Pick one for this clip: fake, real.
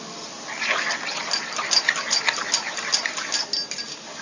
real